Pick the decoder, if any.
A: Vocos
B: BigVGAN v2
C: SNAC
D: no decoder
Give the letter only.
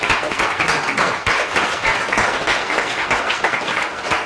C